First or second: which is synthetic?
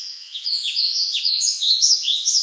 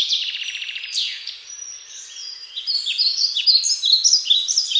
first